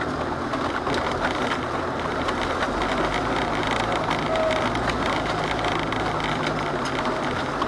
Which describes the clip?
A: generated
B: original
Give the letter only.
B